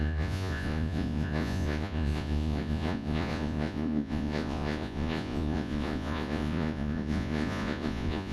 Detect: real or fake fake